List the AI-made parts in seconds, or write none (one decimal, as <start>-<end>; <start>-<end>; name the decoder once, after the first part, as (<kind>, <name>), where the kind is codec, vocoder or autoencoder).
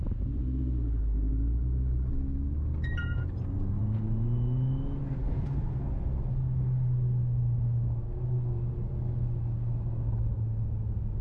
none